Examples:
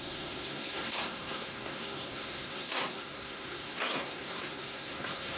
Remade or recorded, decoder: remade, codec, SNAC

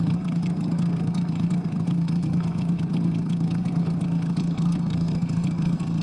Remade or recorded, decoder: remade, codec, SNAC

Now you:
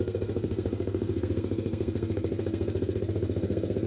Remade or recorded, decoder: remade, codec, SNAC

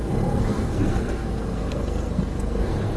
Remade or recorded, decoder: remade, codec, SNAC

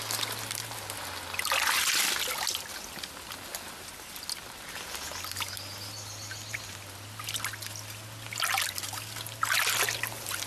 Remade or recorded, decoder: recorded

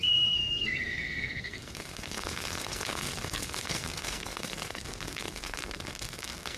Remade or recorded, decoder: remade, codec, SNAC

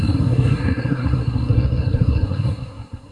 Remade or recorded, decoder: remade, codec, SNAC